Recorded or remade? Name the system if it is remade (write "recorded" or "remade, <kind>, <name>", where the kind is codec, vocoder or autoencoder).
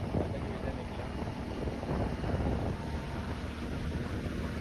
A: recorded